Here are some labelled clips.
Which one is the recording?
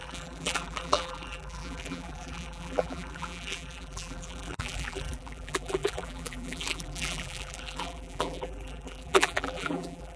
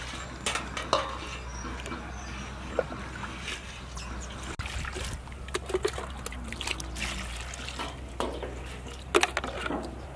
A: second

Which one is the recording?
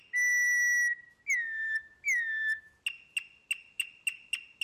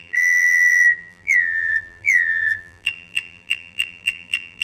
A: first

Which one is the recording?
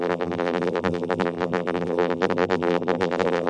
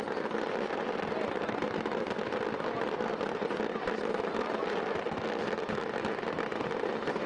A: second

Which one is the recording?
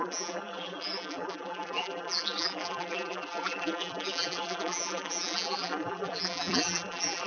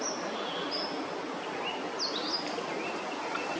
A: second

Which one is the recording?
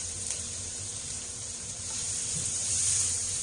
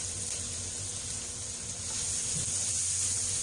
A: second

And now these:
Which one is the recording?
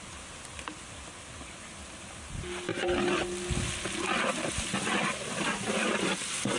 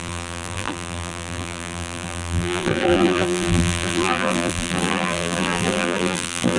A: first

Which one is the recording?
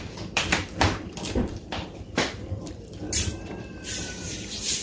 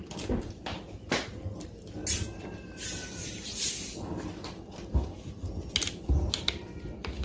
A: second